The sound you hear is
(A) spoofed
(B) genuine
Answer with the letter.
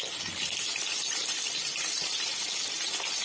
B